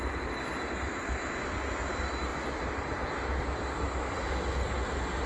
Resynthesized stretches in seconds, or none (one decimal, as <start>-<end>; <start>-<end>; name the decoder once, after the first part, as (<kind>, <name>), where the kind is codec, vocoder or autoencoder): none